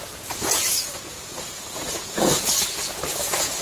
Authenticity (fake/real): fake